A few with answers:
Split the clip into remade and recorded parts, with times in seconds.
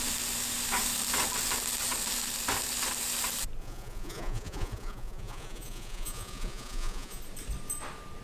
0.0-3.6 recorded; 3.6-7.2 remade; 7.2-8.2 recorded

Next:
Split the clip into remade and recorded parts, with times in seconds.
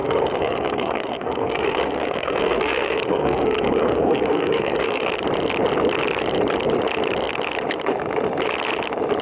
0.0-5.1 remade; 5.1-9.2 recorded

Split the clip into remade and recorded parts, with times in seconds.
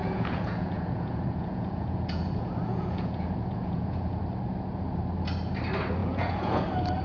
0.0-4.2 remade; 4.2-6.0 recorded; 6.0-6.6 remade; 6.6-7.0 recorded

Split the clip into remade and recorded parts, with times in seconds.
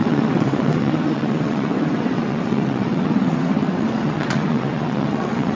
0.0-5.6 remade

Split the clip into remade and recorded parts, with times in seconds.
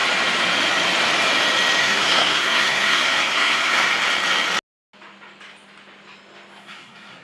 0.0-1.8 recorded; 1.8-3.9 remade; 3.9-6.6 recorded; 6.6-7.2 remade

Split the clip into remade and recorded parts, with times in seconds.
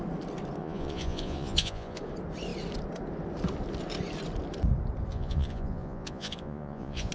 0.0-0.6 recorded; 0.6-2.0 remade; 2.0-5.1 recorded; 5.1-7.1 remade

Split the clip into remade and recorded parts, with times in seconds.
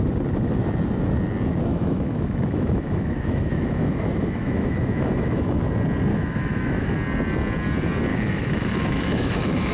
0.0-1.7 recorded; 1.7-5.6 remade; 5.6-6.1 recorded; 6.1-6.9 remade; 6.9-8.1 recorded; 8.1-9.7 remade